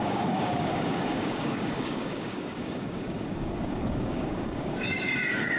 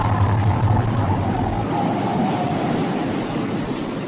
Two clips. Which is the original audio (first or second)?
second